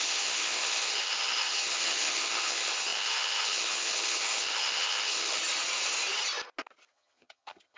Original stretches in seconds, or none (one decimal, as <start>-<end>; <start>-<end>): 5.4-6.9